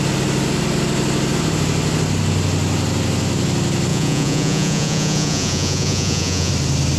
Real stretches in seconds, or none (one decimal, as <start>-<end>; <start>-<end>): 0.0-3.9; 6.5-7.0